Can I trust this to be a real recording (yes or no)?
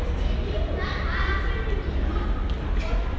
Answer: yes